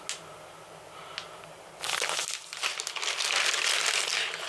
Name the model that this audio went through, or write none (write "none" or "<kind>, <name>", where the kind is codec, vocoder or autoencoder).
none